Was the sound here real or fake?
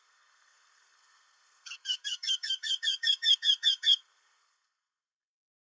fake